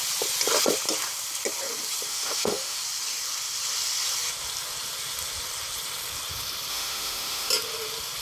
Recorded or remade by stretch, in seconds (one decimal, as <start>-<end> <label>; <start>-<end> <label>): 0.0-2.1 recorded; 2.1-2.8 remade; 2.8-6.7 recorded; 6.7-7.5 remade; 7.5-8.2 recorded